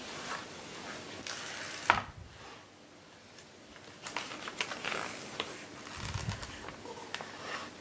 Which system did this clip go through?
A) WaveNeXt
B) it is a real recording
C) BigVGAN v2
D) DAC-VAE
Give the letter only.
B